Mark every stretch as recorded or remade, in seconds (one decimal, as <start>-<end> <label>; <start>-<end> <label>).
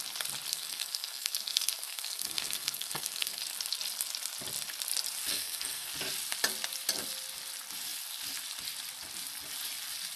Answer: 0.0-0.5 recorded; 0.5-3.4 remade; 3.4-5.3 recorded; 5.3-5.9 remade; 5.9-10.2 recorded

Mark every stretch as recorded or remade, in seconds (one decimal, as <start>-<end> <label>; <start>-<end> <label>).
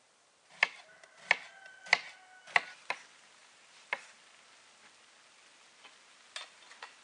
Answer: 0.0-7.0 recorded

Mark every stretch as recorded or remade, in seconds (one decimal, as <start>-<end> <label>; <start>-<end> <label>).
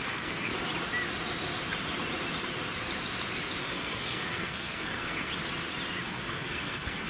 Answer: 0.0-0.5 remade; 0.5-3.6 recorded; 3.6-5.3 remade; 5.3-6.0 recorded; 6.0-7.1 remade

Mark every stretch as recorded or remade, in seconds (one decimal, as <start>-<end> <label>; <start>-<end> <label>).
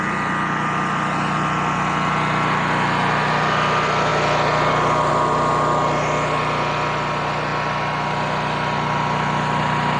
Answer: 0.0-10.0 recorded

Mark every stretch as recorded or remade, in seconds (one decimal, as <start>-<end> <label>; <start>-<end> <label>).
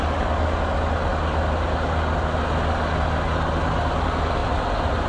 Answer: 0.0-5.1 recorded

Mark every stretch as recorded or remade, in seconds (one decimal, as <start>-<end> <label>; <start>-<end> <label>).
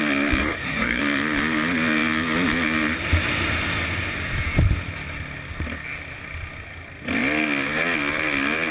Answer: 0.0-0.4 recorded; 0.4-1.0 remade; 1.0-8.7 recorded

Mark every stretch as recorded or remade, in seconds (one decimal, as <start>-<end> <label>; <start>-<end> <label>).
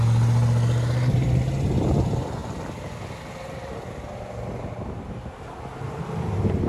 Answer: 0.0-6.7 recorded